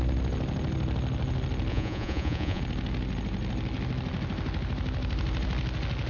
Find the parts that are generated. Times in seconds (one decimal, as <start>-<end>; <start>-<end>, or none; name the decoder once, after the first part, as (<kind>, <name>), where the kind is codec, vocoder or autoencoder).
1.7-2.6 (vocoder, Vocos)

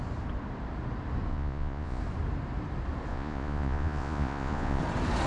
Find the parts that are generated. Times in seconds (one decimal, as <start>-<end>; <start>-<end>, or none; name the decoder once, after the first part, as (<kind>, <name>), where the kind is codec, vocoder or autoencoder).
1.3-2.0 (vocoder, Vocos); 3.1-4.8

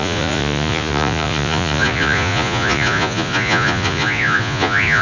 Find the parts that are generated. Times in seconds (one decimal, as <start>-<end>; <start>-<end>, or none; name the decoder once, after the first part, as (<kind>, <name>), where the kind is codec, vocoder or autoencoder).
0.0-5.0 (vocoder, Vocos)